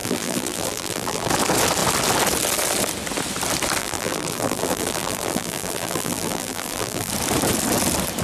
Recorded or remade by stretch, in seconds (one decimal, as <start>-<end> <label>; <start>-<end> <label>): 0.0-1.3 remade; 1.3-3.8 recorded; 3.8-7.1 remade; 7.1-8.2 recorded